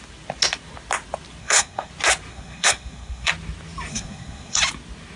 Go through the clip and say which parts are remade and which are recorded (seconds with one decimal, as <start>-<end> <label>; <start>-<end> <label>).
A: 0.0-1.4 recorded; 1.4-1.9 remade; 1.9-2.3 recorded; 2.3-3.3 remade; 3.3-3.9 recorded; 3.9-4.6 remade; 4.6-5.2 recorded